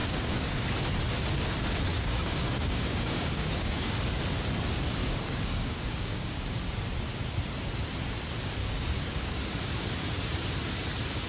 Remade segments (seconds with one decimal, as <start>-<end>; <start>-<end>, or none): 0.0-0.6; 1.9-3.9; 5.0-6.6; 8.6-9.4